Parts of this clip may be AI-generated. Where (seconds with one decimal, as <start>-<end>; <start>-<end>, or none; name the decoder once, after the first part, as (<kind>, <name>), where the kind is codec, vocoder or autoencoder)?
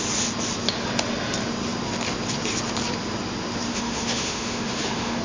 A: 3.7-5.2 (autoencoder, DAC-VAE)